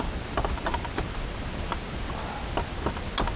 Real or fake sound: real